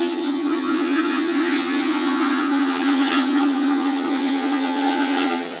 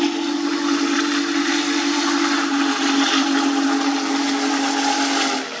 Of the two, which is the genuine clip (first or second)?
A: second